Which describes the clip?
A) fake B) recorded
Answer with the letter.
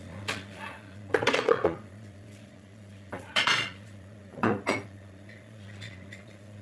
A